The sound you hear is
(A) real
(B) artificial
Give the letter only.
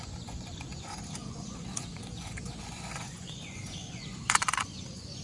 B